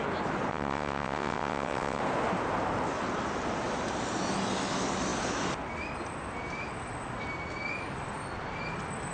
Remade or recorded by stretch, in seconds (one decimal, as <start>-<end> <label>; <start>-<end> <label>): 0.0-0.5 recorded; 0.5-2.0 remade; 2.0-9.1 recorded